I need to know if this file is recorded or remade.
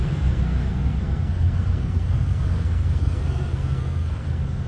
remade